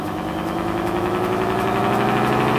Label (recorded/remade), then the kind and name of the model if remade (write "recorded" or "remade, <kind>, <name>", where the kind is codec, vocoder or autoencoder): remade, autoencoder, DAC-VAE